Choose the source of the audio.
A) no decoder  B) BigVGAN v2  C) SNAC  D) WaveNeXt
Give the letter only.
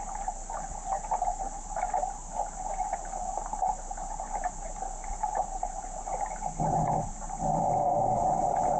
A